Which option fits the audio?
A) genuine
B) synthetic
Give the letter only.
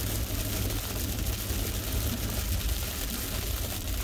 A